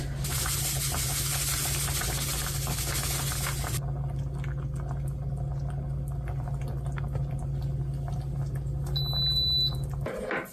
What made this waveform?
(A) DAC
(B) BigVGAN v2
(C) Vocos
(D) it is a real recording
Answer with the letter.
D